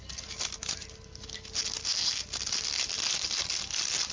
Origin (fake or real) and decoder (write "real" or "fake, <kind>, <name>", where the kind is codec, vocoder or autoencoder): real